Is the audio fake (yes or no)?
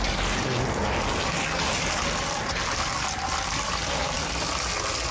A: no